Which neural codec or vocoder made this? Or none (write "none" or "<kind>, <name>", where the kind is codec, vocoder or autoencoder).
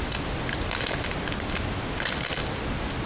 none